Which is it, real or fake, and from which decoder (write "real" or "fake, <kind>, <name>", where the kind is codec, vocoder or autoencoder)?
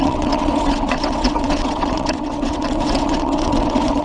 fake, vocoder, WaveNeXt